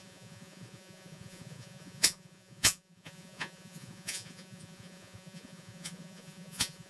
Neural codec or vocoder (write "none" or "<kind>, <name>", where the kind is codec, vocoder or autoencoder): vocoder, Vocos